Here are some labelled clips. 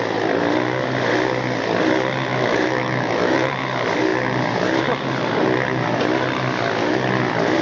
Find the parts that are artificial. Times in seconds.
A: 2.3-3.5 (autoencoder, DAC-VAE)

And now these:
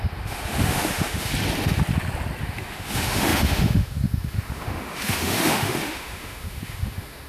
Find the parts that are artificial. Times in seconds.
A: 0.0-1.3 (autoencoder, DAC-VAE); 2.4-7.3

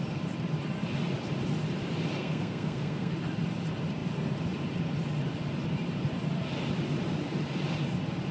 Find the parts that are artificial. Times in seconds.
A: 2.2-3.1 (codec, SNAC)

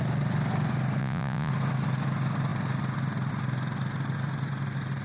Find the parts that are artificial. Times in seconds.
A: 1.0-1.5 (vocoder, Vocos)

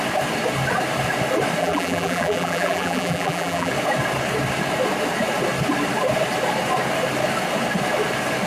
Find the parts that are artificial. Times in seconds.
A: 1.6-3.7 (vocoder, BigVGAN v2)

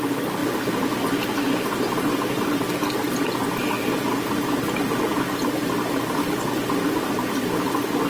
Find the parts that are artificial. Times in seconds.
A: none

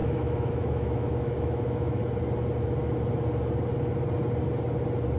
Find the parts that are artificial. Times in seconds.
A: 0.0-2.0 (autoencoder, DAC-VAE)